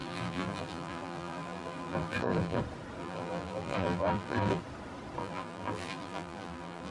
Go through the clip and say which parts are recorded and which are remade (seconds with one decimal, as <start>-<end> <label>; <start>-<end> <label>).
0.0-2.6 remade; 2.6-3.0 recorded; 3.0-4.6 remade; 4.6-5.2 recorded; 5.2-6.9 remade